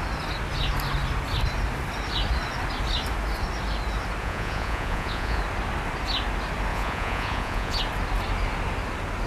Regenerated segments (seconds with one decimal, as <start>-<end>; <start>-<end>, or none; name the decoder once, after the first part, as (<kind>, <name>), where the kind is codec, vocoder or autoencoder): 4.2-5.4 (vocoder, Vocos); 6.7-7.8